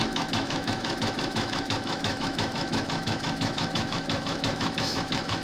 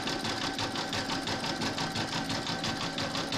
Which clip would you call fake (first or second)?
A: first